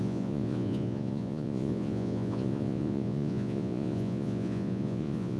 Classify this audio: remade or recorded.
remade